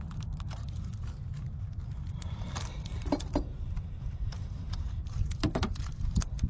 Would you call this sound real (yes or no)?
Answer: no